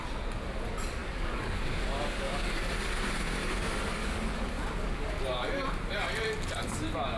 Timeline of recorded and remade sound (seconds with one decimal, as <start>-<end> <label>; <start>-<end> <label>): 0.0-1.0 recorded; 1.0-2.7 remade; 2.7-4.0 recorded; 4.0-5.2 remade; 5.2-7.2 recorded